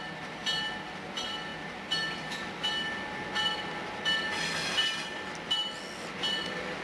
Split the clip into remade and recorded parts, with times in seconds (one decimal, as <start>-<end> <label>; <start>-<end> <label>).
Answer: 0.0-6.8 recorded